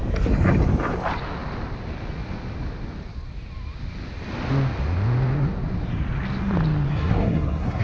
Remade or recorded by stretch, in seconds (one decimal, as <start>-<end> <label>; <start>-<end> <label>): 0.0-6.9 recorded; 6.9-7.8 remade